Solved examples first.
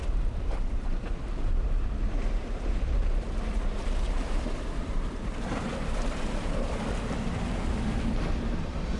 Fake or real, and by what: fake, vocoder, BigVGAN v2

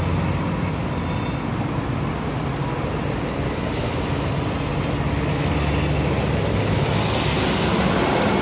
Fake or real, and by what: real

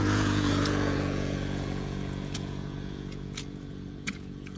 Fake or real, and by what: fake, vocoder, Vocos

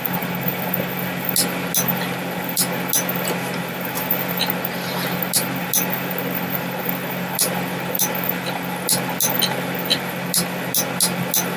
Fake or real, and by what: real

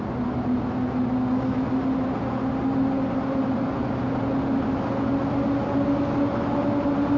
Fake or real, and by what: real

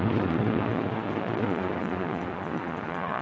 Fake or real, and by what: fake, vocoder, Vocos